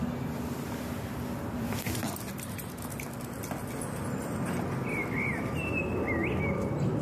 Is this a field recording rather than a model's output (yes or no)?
yes